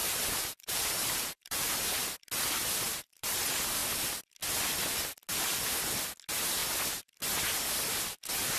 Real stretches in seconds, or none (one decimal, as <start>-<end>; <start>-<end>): 2.2-2.9; 3.4-8.6